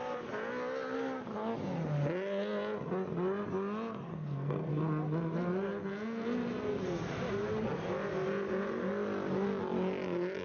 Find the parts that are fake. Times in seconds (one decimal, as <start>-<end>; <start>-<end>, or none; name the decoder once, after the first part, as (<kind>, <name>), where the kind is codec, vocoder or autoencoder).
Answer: 4.1-4.7 (codec, SNAC)